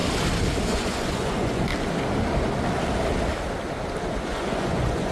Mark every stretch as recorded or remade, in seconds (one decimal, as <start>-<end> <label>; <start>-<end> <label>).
0.0-0.7 recorded; 0.7-1.7 remade; 1.7-4.2 recorded; 4.2-5.1 remade